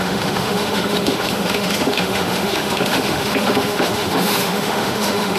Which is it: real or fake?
fake